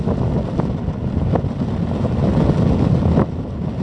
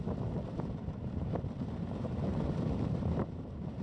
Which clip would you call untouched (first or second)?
first